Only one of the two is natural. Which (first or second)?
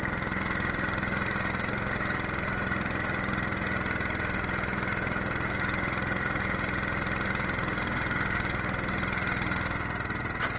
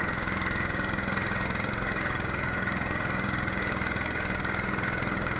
first